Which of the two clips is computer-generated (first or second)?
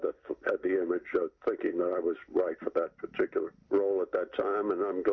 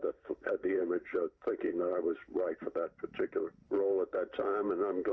second